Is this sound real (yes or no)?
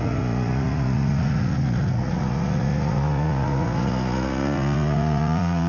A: no